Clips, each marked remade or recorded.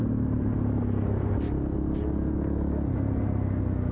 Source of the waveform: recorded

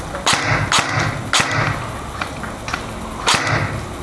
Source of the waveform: recorded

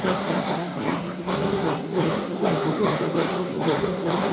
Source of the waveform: remade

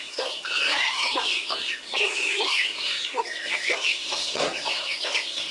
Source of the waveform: remade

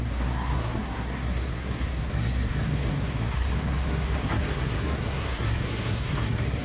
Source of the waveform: remade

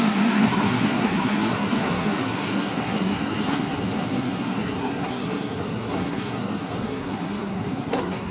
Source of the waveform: remade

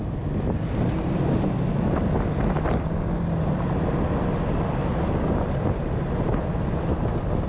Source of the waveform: recorded